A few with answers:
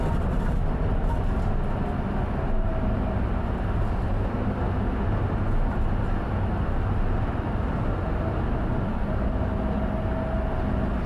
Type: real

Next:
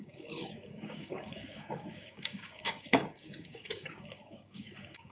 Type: fake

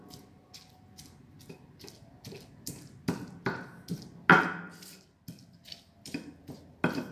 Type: real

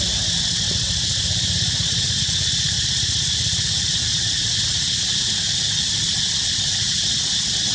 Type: real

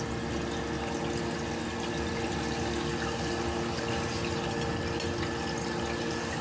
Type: real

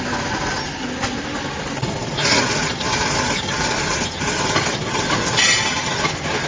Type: real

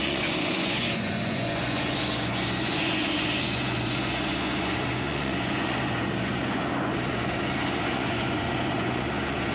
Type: fake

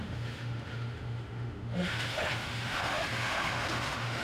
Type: fake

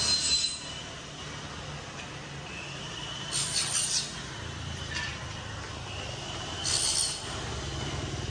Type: real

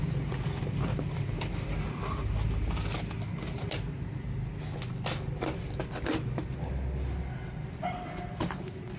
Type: real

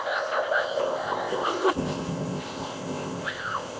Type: fake